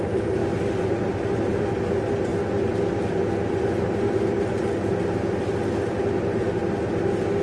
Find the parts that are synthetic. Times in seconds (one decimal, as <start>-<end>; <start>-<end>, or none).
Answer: none